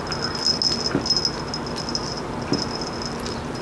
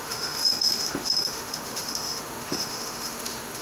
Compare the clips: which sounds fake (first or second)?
second